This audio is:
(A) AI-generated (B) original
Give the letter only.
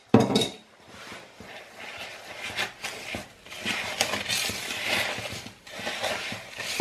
B